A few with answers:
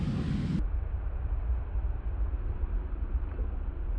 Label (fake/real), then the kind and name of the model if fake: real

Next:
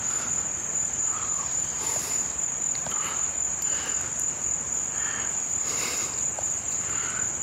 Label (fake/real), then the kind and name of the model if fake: real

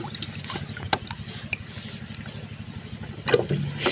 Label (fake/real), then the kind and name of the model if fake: real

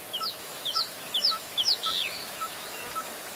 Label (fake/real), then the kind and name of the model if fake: fake, autoencoder, DAC-VAE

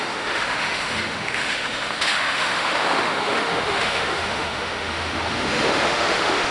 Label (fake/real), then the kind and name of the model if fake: fake, autoencoder, DAC-VAE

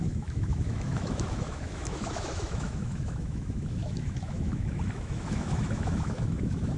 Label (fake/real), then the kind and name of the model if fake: fake, autoencoder, DAC-VAE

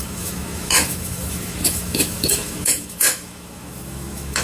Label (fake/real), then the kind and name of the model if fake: fake, autoencoder, DAC-VAE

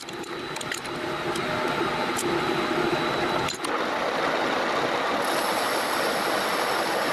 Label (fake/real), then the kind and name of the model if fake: real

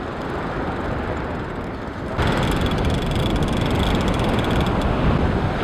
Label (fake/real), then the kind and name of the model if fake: real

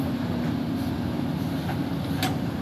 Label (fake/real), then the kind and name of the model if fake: real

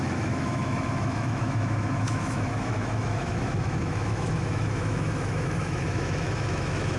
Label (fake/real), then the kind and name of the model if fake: fake, autoencoder, DAC-VAE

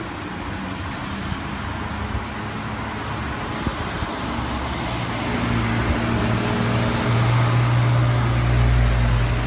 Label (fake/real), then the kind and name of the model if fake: real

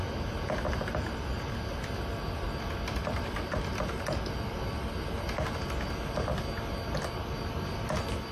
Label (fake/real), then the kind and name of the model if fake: real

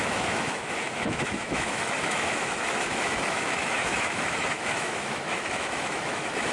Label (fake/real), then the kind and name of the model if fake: fake, autoencoder, DAC-VAE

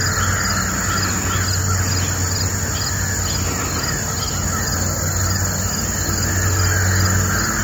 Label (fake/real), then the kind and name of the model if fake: real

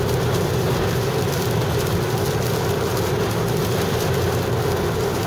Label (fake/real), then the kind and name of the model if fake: real